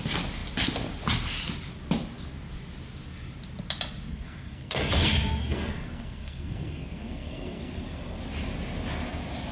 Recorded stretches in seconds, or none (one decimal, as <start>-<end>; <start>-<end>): 0.0-4.1; 8.2-9.5